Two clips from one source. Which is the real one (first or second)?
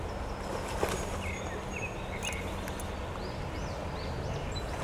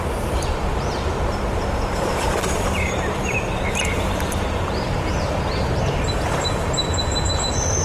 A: first